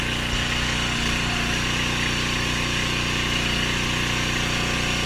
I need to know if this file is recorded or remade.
recorded